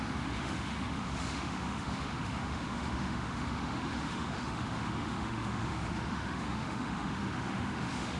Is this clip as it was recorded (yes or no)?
no